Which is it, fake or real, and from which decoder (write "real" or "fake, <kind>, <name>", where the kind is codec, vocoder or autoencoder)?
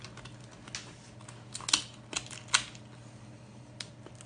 real